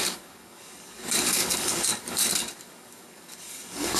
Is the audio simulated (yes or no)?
yes